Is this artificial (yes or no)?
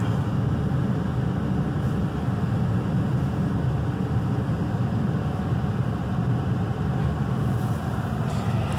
no